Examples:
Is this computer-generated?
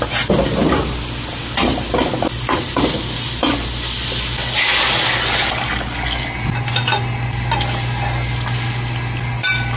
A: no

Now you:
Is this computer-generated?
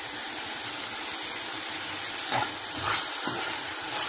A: no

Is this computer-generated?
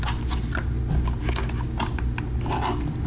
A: no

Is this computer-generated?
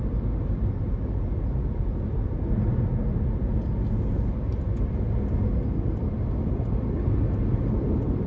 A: no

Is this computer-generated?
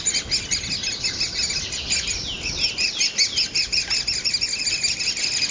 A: no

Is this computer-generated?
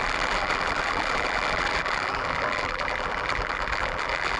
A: yes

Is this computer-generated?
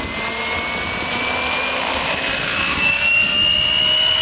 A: no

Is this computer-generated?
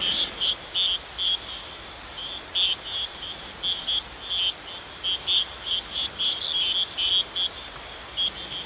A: no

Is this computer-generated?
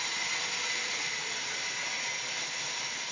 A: no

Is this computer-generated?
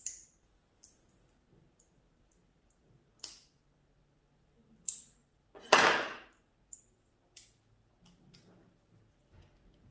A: no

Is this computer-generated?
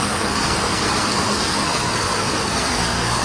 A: yes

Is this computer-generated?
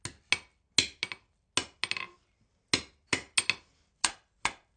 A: no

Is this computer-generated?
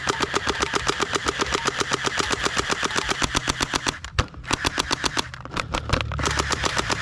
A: no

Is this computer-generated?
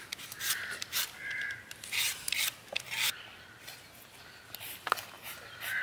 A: no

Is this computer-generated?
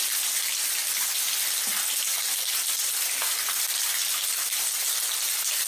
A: no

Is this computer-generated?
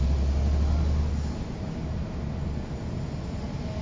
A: no